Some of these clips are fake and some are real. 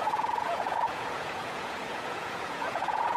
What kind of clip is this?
fake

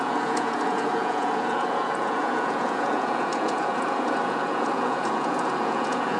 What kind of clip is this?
fake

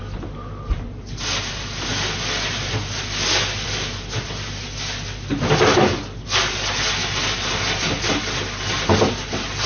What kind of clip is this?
real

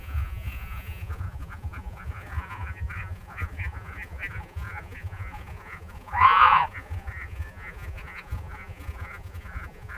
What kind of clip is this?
fake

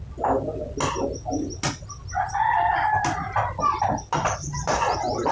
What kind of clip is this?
real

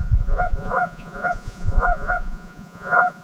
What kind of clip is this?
fake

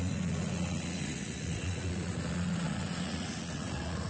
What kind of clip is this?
fake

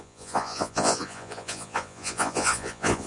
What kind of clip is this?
fake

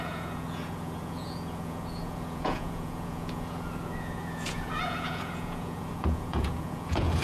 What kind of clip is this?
fake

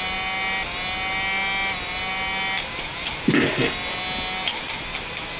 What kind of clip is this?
real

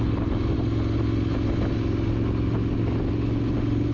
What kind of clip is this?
real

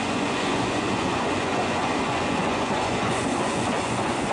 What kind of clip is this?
fake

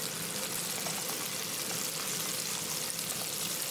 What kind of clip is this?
real